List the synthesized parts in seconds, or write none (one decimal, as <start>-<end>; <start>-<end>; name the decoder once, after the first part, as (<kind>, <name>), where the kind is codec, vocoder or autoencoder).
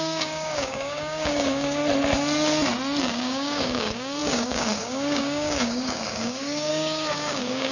0.0-1.8 (codec, DAC); 3.0-7.7